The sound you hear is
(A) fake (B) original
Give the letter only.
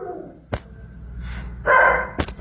B